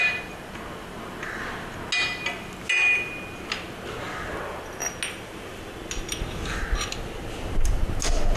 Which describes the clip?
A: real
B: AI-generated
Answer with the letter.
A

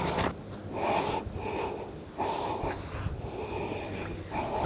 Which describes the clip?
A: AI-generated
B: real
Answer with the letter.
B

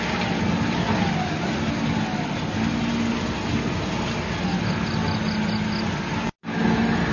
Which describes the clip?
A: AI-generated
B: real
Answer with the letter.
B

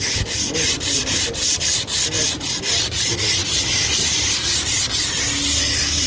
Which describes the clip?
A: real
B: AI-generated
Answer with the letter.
B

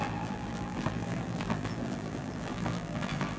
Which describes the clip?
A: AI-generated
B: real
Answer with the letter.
A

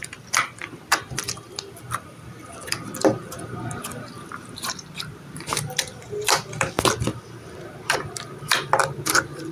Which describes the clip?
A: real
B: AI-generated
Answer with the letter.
B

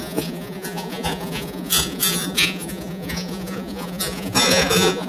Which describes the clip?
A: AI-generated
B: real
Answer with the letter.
A